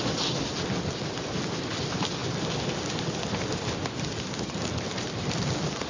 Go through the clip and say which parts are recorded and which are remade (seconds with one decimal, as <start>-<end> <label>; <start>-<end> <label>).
0.0-5.9 recorded